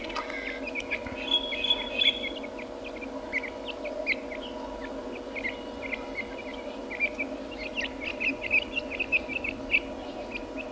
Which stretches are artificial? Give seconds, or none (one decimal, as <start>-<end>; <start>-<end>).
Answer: none